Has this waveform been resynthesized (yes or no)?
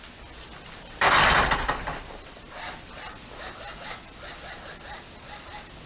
no